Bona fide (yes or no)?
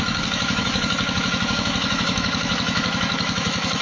no